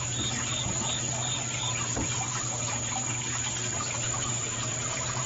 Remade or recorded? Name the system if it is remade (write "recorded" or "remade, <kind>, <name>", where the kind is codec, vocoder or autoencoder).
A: remade, vocoder, BigVGAN v2